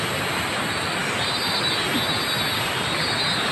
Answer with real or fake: real